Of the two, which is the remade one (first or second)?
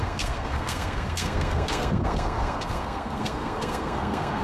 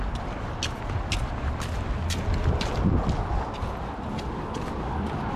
first